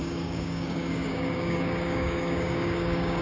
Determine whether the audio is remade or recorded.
remade